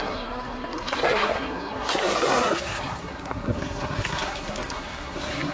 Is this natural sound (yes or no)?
no